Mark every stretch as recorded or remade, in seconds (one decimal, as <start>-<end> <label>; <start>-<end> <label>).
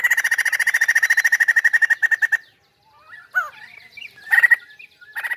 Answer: 0.0-5.4 recorded